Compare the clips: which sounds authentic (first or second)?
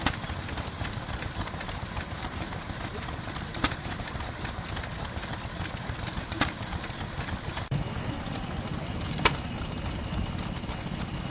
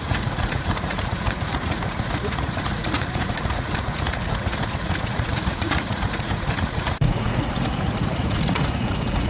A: first